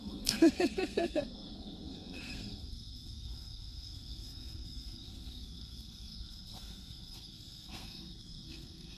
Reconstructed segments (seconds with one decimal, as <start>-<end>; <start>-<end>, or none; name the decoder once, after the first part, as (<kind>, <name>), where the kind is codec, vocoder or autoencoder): 0.0-9.0 (codec, SNAC)